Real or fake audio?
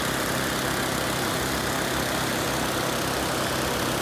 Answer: real